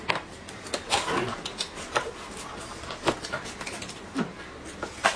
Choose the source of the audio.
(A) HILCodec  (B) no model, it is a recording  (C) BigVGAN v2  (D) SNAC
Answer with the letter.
B